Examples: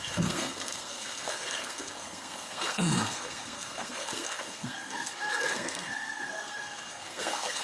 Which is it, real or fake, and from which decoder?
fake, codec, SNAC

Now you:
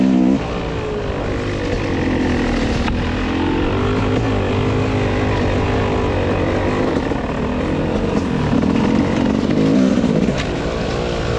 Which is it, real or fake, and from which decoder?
real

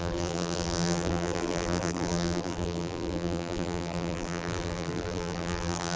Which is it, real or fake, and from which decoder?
fake, vocoder, BigVGAN v2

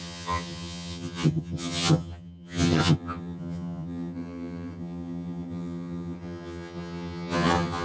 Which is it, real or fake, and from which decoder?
fake, vocoder, HiFi-GAN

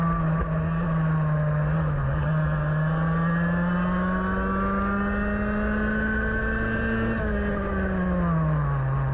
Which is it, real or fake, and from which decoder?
real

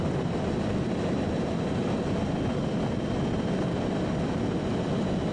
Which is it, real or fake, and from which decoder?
real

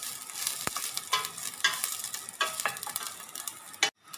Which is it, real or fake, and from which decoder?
real